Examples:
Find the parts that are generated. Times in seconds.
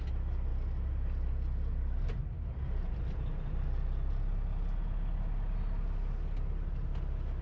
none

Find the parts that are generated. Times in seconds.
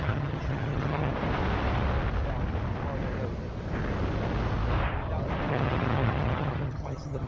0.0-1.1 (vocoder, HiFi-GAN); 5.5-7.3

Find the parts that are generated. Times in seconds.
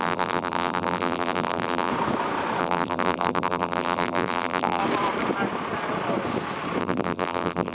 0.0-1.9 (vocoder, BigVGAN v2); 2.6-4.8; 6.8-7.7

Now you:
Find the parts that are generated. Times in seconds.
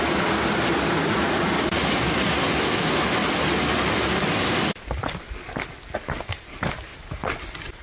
1.0-1.5 (vocoder, Vocos)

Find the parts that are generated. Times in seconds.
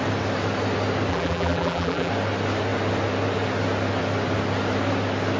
1.1-2.1 (vocoder, BigVGAN v2)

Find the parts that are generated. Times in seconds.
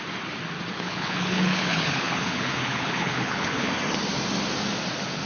0.7-3.7 (codec, HILCodec)